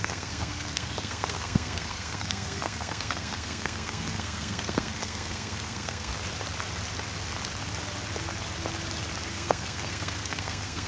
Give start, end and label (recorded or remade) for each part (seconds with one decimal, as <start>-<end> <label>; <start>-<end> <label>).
0.0-6.1 remade; 6.1-9.3 recorded; 9.3-10.9 remade